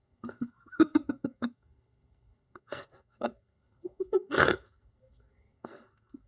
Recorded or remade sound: remade